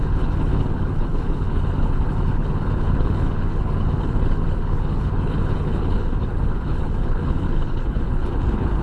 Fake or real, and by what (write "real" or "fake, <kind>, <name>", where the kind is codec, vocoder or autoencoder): fake, codec, HILCodec